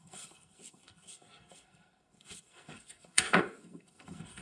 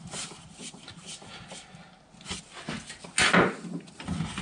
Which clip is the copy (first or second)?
first